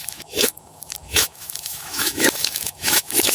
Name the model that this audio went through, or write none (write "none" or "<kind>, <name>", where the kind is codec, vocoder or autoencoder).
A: autoencoder, DAC-VAE